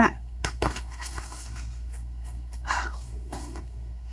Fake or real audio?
fake